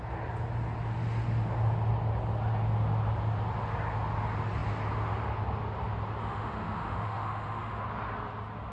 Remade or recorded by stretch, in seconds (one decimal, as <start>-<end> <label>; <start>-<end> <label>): 0.0-6.2 recorded; 6.2-7.8 remade; 7.8-8.7 recorded